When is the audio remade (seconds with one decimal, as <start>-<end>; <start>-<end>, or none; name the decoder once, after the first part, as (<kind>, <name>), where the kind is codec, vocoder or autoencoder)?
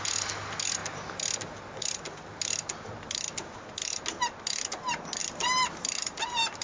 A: 5.2-6.6 (vocoder, BigVGAN v2)